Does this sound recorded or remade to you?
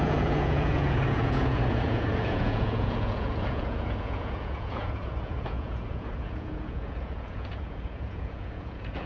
remade